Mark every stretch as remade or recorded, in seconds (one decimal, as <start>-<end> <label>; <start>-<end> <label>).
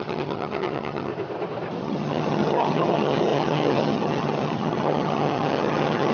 0.0-1.1 remade; 1.1-1.8 recorded; 1.8-6.1 remade